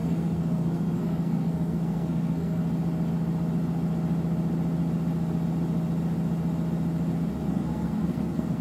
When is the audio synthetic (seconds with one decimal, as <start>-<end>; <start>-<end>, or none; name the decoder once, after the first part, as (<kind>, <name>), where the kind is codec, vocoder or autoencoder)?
0.0-2.6 (codec, SNAC); 7.5-8.6